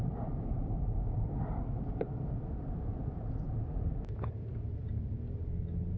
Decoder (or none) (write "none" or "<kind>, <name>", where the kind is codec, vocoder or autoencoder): vocoder, BigVGAN v2